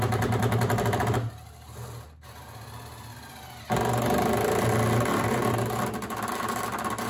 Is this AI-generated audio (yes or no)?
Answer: no